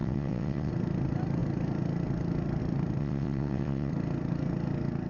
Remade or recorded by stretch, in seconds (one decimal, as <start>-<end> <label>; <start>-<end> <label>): 0.0-0.7 remade; 0.7-3.0 recorded; 3.0-3.9 remade; 3.9-5.1 recorded